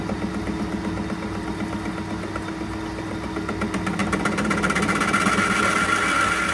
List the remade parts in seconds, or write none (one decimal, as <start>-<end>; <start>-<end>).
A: none